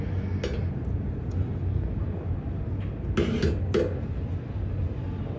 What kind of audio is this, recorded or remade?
recorded